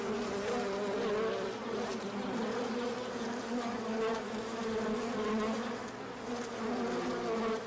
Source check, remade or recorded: recorded